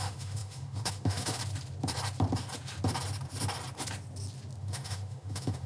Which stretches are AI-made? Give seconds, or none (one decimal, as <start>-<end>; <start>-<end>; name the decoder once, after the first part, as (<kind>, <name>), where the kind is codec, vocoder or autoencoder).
0.0-1.4 (autoencoder, DAC-VAE); 4.6-5.7